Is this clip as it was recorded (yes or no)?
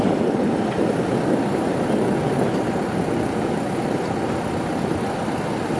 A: yes